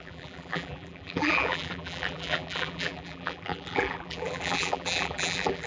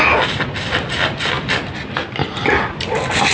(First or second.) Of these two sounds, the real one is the second